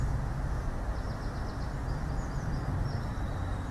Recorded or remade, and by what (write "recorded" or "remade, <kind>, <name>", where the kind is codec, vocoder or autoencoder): recorded